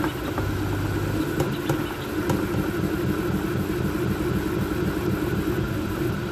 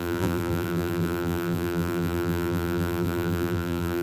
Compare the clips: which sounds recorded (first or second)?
first